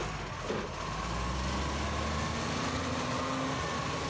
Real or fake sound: real